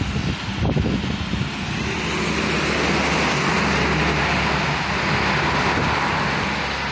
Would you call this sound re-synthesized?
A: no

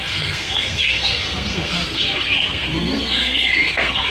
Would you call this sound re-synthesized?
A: yes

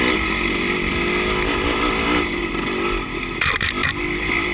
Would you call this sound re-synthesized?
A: no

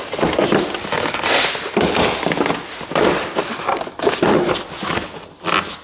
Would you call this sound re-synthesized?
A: no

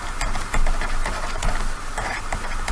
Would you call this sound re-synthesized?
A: no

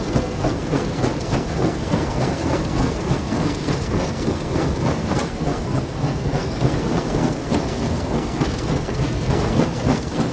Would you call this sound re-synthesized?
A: yes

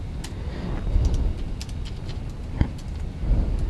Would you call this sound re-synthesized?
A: no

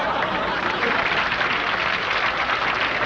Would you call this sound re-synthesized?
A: no